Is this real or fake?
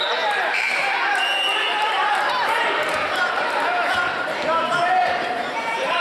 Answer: fake